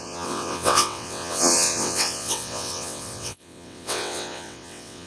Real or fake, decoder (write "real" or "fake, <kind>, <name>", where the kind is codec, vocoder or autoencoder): fake, vocoder, WaveNeXt